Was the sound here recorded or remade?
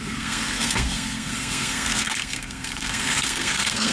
remade